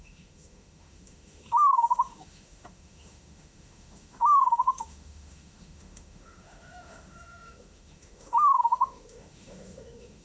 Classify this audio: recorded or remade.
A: remade